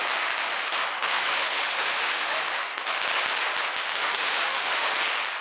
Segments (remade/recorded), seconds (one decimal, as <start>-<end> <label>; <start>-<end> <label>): 0.0-0.4 recorded; 0.4-3.0 remade; 3.0-3.9 recorded; 3.9-4.9 remade; 4.9-5.4 recorded